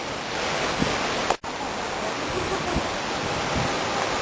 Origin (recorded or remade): recorded